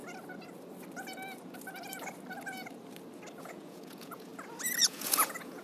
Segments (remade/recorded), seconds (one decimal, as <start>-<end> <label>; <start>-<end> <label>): 0.0-3.4 recorded; 3.4-4.3 remade; 4.3-4.8 recorded; 4.8-5.6 remade